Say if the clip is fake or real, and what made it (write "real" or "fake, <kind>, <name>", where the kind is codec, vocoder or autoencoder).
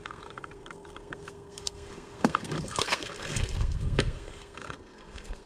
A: fake, codec, SNAC